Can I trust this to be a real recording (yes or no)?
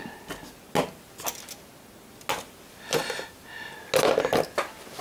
yes